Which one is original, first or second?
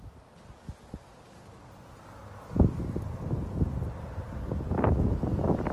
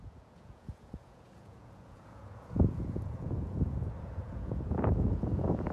first